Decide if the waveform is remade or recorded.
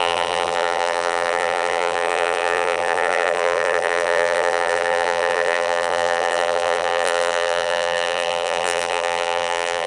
remade